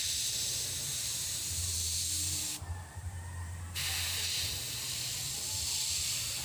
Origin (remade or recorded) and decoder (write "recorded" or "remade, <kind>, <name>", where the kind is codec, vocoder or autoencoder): remade, vocoder, BigVGAN v2